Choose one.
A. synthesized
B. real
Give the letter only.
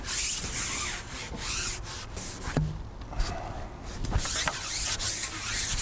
B